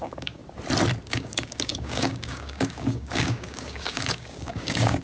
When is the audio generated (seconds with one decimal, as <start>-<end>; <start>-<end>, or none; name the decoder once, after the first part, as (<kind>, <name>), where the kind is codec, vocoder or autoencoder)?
0.0-0.4 (codec, DAC); 1.1-5.0